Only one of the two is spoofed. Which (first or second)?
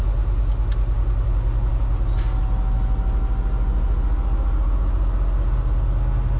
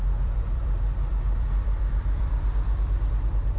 second